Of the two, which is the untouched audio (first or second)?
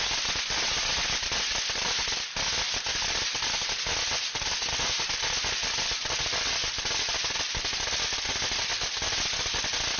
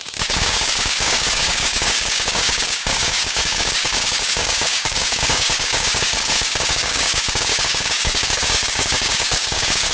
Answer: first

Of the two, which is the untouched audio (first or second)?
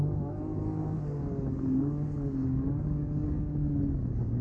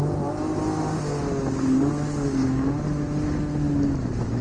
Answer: second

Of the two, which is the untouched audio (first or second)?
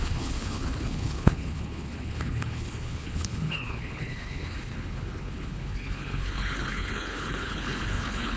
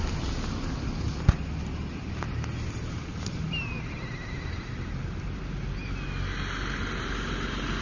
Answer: second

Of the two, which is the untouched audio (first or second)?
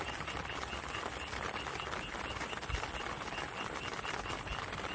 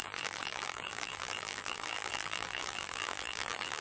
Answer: first